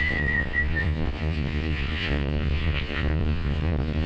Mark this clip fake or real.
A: fake